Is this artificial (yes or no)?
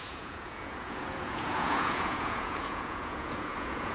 yes